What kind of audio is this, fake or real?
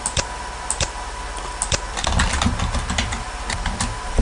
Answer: real